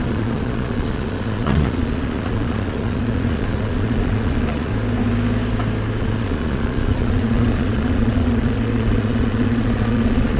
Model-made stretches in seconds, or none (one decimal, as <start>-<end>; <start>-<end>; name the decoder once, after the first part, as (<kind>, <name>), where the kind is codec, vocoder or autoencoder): 0.0-4.7 (vocoder, Vocos); 6.0-10.4